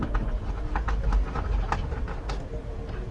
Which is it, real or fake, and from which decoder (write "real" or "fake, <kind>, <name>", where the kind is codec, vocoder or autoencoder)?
real